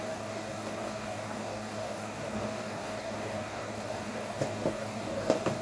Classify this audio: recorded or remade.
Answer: remade